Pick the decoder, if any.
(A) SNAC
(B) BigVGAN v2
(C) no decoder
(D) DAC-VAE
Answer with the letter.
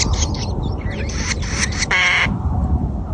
C